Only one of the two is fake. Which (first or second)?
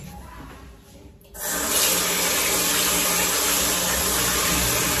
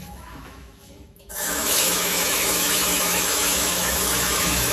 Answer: second